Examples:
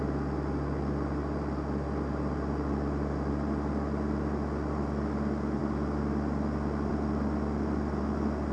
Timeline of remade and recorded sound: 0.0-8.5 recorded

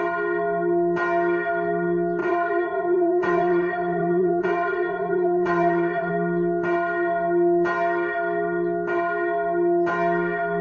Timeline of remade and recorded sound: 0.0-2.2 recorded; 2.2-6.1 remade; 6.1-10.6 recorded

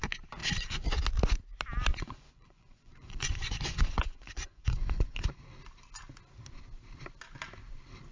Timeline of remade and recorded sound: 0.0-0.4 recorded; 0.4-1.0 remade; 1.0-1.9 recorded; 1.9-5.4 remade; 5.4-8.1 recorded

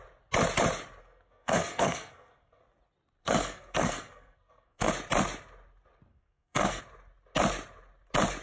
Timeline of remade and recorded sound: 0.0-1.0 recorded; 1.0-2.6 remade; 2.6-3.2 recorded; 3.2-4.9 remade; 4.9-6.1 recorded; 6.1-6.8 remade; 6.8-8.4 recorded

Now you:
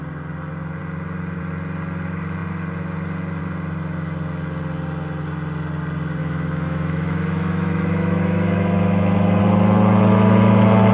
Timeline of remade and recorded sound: 0.0-6.2 recorded; 6.2-9.4 remade; 9.4-10.9 recorded